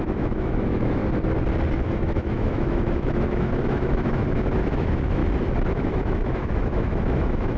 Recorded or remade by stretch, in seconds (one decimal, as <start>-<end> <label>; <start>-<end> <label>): 0.0-1.0 remade; 1.0-1.7 recorded; 1.7-5.2 remade; 5.2-5.7 recorded; 5.7-7.6 remade

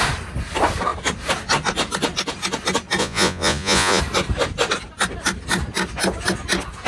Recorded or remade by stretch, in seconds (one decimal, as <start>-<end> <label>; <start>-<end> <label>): 0.0-3.0 recorded; 3.0-4.0 remade; 4.0-6.9 recorded

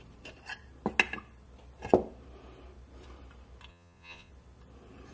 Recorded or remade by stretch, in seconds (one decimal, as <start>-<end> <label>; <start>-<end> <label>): 0.0-3.7 recorded; 3.7-4.3 remade; 4.3-5.1 recorded

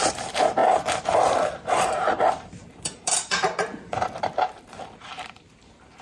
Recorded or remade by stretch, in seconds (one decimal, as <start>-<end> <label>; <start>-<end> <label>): 0.0-6.0 remade

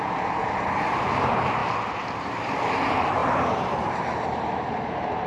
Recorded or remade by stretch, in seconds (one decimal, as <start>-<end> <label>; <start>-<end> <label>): 0.0-5.3 remade